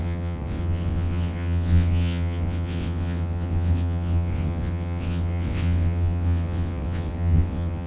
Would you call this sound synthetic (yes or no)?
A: yes